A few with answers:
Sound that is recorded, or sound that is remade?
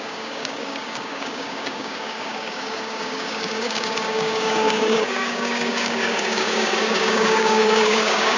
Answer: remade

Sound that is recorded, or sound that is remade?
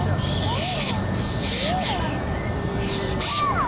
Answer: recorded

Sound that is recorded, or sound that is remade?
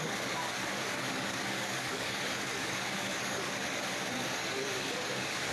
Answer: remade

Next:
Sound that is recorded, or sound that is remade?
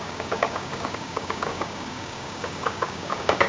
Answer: remade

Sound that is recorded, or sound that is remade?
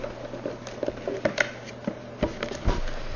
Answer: recorded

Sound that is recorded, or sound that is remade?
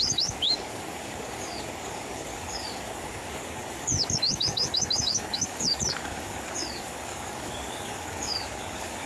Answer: remade